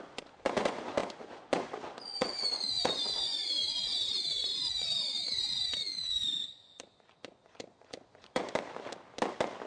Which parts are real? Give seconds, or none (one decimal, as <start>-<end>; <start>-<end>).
8.4-9.7